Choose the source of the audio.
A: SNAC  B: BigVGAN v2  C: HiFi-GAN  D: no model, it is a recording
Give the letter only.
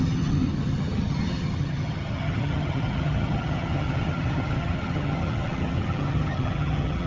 C